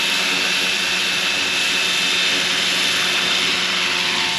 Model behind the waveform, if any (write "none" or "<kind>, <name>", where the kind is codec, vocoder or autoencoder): none